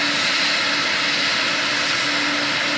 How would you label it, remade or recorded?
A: recorded